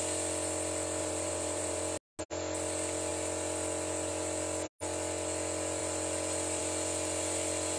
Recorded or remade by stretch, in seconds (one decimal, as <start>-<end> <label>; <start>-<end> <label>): 0.0-1.0 recorded; 1.0-1.8 remade; 1.8-7.8 recorded